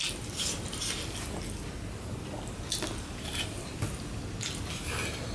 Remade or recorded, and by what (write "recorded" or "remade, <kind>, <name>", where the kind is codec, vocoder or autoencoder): recorded